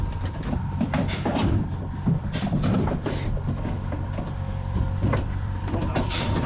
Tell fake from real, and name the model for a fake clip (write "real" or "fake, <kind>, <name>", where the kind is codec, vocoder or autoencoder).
fake, vocoder, BigVGAN v2